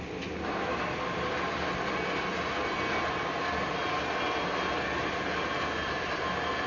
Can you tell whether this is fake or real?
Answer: real